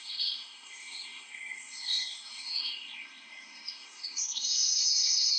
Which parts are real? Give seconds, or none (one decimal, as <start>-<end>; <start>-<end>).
none